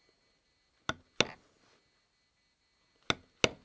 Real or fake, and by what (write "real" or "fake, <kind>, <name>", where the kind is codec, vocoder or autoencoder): real